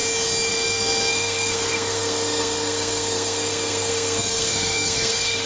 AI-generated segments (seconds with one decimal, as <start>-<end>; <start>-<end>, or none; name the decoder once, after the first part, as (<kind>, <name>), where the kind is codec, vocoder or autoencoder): 0.5-5.5 (codec, SNAC)